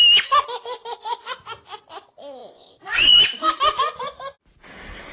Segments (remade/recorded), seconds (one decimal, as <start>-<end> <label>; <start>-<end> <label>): 0.0-2.4 recorded; 2.4-3.2 remade; 3.2-5.1 recorded